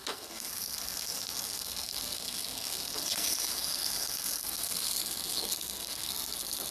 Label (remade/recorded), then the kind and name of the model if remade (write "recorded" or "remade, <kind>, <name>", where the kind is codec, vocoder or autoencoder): remade, codec, SNAC